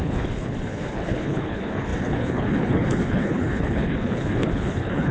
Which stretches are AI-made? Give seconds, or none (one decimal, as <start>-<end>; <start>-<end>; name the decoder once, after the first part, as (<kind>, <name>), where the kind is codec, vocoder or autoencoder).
0.0-5.1 (codec, HILCodec)